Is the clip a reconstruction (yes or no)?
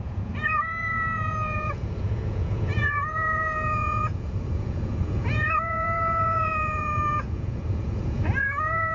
yes